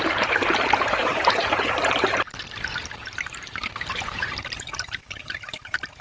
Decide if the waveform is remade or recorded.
remade